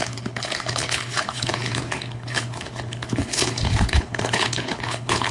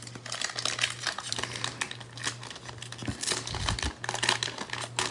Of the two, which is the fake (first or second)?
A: first